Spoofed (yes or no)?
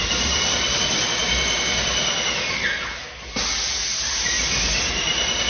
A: no